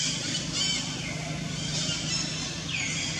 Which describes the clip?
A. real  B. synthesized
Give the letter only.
A